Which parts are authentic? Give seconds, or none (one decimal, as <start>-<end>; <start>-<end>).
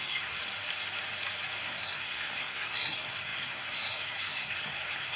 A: 0.4-1.6